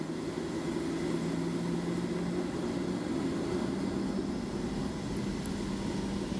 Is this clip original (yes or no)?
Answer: yes